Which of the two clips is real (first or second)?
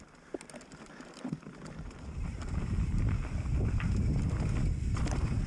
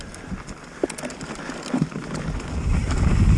second